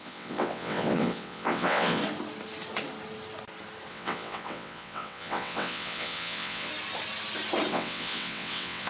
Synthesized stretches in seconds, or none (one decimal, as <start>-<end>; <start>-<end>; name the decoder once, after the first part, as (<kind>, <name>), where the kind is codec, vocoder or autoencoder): 0.0-2.0 (vocoder, WaveNeXt); 3.9-6.7; 7.7-8.9